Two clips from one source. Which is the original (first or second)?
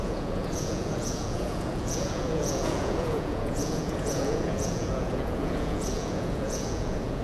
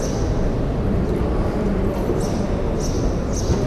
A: second